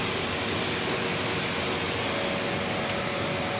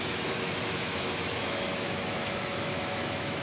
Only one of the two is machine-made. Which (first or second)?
second